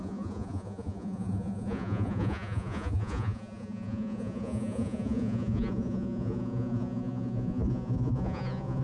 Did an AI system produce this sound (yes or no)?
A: yes